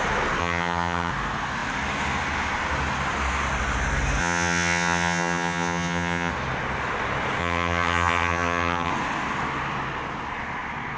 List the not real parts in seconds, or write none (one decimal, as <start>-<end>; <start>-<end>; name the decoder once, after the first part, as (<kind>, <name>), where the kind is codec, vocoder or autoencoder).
0.4-1.1 (vocoder, HiFi-GAN); 4.2-6.3; 7.4-8.9